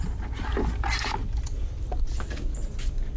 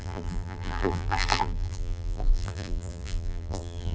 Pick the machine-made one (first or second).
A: second